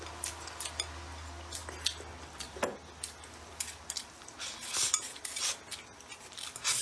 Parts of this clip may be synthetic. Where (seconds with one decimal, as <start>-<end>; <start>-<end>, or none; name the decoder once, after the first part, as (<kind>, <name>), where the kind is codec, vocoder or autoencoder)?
none